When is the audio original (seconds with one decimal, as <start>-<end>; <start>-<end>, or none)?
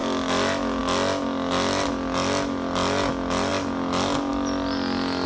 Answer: 0.0-5.3